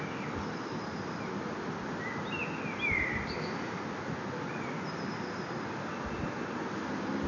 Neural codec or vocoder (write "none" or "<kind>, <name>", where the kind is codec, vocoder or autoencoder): none